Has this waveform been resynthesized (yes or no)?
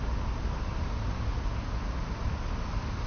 no